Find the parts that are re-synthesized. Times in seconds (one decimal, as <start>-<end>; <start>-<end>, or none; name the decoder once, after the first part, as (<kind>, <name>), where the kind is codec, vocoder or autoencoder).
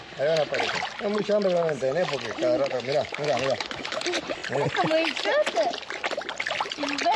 2.7-4.0 (autoencoder, DAC-VAE)